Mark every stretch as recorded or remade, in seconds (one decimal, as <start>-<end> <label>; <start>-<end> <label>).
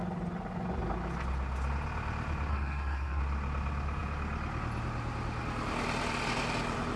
0.0-2.5 recorded; 2.5-3.2 remade; 3.2-7.0 recorded